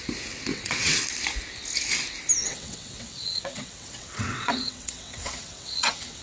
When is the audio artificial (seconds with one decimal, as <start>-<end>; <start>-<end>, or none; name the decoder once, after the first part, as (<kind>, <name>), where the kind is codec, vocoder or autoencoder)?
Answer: 0.5-1.0 (vocoder, WaveNeXt); 2.4-6.2